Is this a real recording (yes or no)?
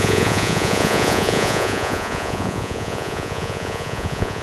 no